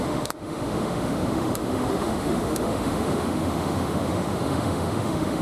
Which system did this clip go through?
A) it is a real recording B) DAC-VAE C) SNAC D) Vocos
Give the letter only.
B